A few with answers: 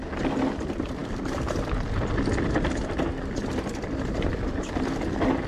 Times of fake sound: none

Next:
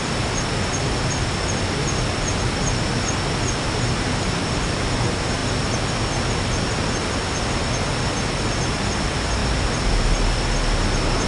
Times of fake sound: none